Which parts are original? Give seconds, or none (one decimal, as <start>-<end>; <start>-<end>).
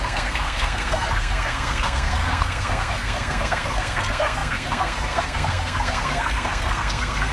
none